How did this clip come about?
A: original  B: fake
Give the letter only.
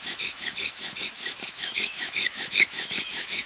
B